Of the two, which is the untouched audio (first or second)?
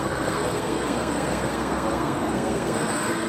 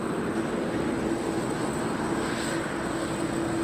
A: second